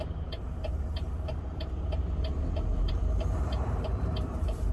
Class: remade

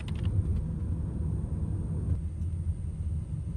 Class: recorded